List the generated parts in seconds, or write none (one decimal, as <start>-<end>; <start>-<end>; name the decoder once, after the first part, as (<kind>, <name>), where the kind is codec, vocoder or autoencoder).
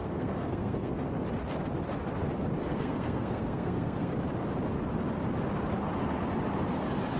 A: 0.0-0.9 (codec, SNAC); 2.6-4.1